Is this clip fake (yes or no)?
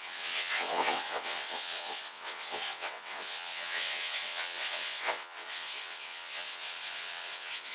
yes